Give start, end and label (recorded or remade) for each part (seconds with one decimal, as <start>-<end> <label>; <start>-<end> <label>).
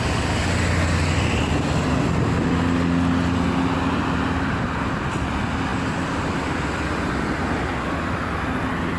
0.0-9.0 recorded